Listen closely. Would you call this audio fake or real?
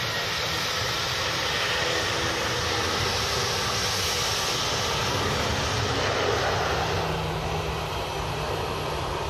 real